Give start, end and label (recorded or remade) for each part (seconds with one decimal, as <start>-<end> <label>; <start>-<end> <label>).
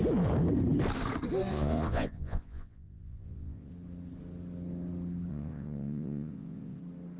0.0-1.5 recorded; 1.5-3.7 remade; 3.7-5.3 recorded; 5.3-6.8 remade; 6.8-7.2 recorded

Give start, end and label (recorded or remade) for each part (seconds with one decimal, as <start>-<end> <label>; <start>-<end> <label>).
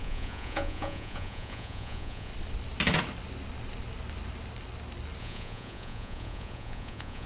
0.0-2.3 remade; 2.3-5.2 recorded; 5.2-7.3 remade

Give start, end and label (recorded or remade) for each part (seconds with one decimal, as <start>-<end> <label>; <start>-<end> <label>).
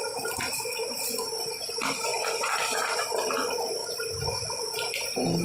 0.0-5.4 recorded